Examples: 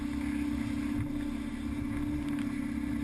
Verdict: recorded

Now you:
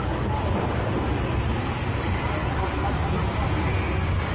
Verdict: recorded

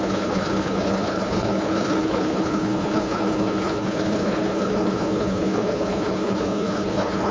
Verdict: remade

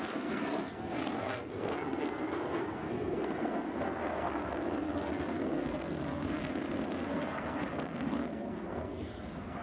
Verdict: remade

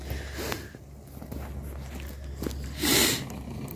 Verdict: recorded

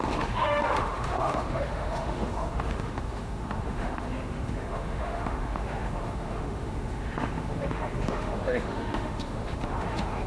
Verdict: remade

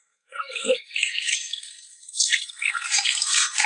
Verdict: remade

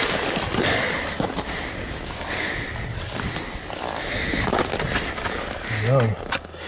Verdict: recorded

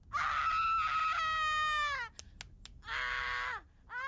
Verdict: recorded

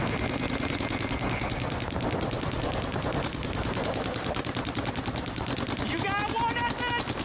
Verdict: recorded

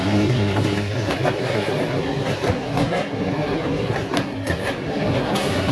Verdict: remade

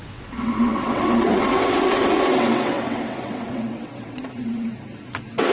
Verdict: remade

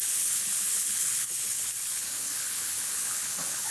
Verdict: remade